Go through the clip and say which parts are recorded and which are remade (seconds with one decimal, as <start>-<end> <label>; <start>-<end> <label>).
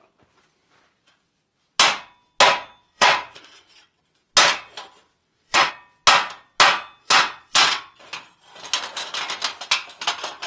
0.0-2.8 recorded; 2.8-4.0 remade; 4.0-5.2 recorded; 5.2-5.7 remade; 5.7-7.0 recorded; 7.0-8.0 remade; 8.0-10.5 recorded